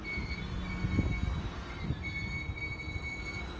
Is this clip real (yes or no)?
yes